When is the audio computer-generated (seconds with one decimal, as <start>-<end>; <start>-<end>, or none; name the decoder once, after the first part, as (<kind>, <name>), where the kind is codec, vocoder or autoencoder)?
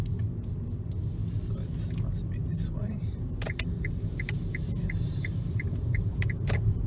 2.8-6.9 (vocoder, BigVGAN v2)